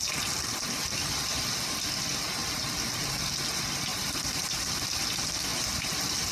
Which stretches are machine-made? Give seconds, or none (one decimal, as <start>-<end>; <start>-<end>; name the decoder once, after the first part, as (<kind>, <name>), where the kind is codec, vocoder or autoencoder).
3.9-4.7 (vocoder, BigVGAN v2); 5.5-6.3